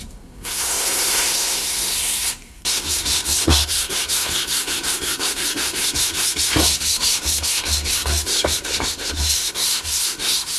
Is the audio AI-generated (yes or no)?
yes